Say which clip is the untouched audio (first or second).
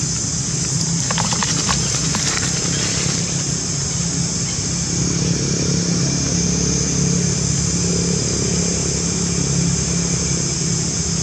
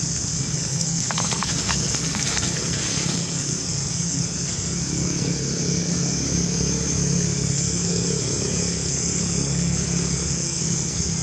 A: first